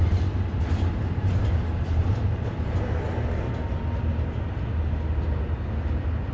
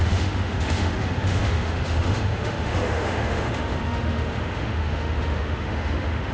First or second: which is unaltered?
first